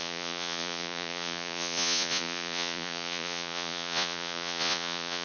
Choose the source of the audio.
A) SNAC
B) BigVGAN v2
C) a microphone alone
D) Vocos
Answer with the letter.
D